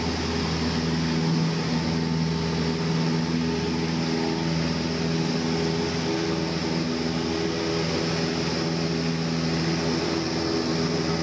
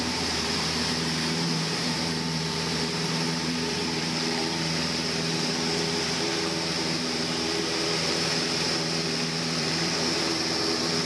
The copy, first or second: second